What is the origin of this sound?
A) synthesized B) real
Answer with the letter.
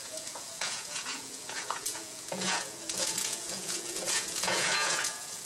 A